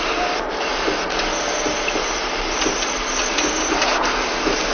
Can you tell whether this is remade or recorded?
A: recorded